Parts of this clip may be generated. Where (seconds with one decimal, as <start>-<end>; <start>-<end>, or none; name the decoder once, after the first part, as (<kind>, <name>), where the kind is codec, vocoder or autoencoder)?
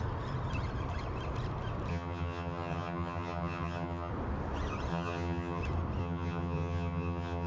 1.9-4.1 (vocoder, HiFi-GAN); 4.9-5.6; 6.0-7.5